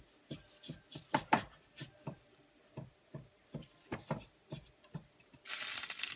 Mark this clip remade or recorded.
remade